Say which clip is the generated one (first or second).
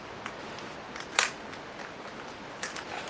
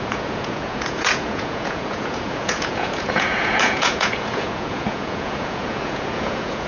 second